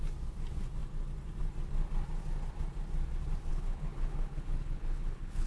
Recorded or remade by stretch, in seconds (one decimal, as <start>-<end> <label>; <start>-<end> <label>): 0.0-3.5 recorded; 3.5-5.5 remade